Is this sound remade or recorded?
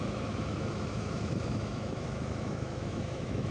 remade